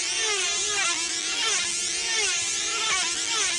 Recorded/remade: recorded